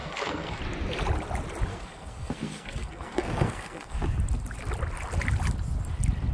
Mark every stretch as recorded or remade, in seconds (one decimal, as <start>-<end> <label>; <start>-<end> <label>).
0.0-0.6 remade; 0.6-1.7 recorded; 1.7-4.0 remade; 4.0-6.3 recorded